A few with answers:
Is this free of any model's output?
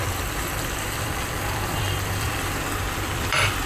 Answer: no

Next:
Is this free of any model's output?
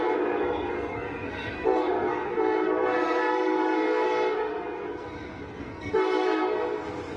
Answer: no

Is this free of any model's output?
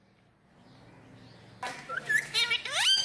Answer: yes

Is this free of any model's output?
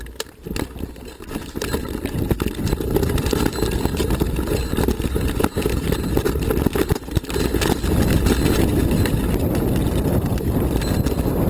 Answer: yes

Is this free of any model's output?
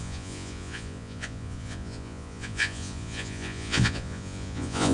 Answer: no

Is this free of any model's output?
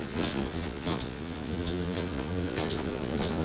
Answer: no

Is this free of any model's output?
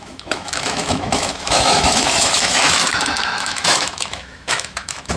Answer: no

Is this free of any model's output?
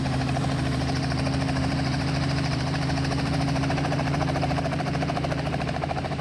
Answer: no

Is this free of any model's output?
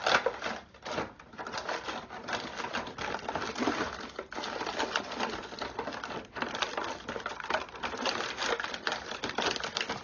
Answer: no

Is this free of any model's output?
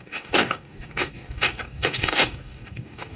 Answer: no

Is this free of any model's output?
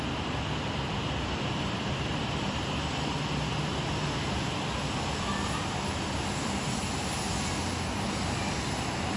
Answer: yes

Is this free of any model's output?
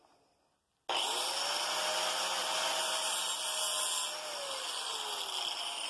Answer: yes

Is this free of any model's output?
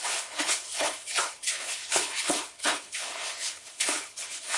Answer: no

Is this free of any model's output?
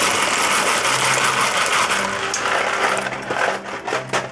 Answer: yes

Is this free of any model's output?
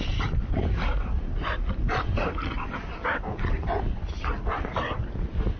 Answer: yes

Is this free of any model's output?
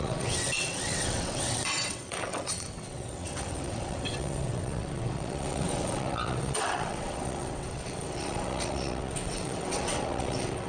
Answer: no